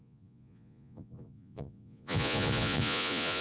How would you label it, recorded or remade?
remade